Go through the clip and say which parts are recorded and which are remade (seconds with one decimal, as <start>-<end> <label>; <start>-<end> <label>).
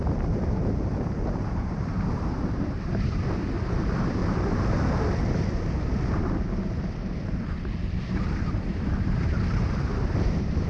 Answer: 0.0-4.2 remade; 4.2-8.1 recorded; 8.1-10.7 remade